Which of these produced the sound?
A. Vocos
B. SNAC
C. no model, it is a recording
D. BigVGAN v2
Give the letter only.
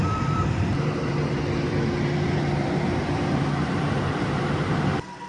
D